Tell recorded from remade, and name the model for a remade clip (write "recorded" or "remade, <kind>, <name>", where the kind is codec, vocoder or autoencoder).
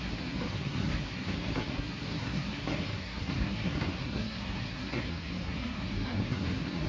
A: remade, codec, SNAC